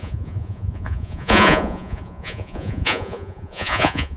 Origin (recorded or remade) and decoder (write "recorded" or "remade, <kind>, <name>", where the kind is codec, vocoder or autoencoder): remade, vocoder, Vocos